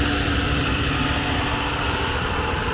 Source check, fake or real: real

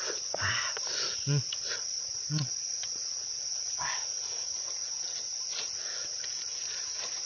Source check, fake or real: fake